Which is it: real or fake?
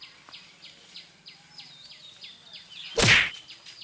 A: real